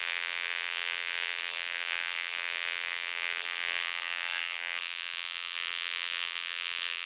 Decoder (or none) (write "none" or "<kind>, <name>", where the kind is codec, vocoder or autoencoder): vocoder, BigVGAN v2